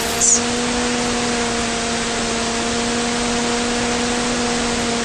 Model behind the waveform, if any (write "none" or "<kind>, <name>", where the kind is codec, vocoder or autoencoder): none